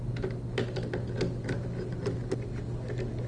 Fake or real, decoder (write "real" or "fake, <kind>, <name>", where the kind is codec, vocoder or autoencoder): real